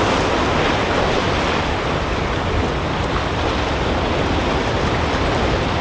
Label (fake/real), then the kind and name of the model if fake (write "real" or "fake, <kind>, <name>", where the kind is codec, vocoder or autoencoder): real